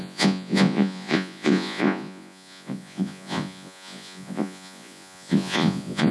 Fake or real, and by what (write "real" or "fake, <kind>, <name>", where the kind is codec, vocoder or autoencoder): fake, vocoder, Vocos